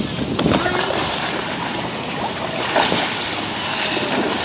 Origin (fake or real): real